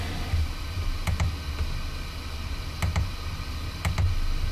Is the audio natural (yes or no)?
yes